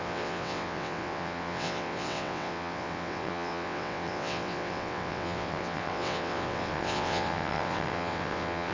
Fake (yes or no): yes